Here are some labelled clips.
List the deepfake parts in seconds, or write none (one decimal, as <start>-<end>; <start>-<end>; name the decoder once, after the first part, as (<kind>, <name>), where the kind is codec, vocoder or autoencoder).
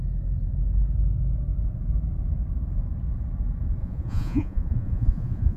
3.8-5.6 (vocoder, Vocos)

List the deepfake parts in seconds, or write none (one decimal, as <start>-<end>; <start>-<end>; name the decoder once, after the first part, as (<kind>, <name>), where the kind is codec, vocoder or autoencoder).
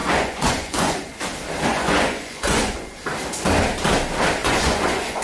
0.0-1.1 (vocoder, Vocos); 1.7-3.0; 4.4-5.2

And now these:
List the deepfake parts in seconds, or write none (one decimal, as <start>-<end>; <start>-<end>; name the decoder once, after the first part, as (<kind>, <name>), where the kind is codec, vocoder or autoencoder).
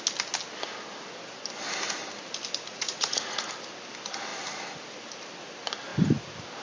2.7-3.5 (vocoder, Vocos)